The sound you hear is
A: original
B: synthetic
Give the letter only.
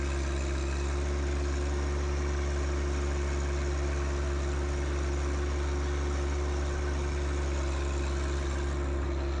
A